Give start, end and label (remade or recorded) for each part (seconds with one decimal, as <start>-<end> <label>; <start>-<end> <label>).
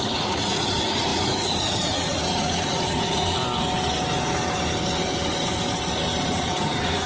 0.0-3.4 remade; 3.4-6.2 recorded; 6.2-7.1 remade